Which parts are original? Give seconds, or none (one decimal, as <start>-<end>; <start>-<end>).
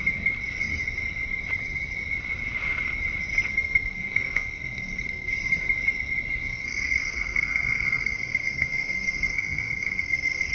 0.0-3.5; 5.3-6.5